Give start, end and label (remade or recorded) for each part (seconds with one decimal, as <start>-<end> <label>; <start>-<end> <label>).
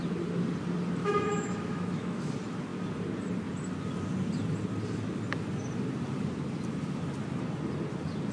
0.0-1.0 recorded; 1.0-2.3 remade; 2.3-8.3 recorded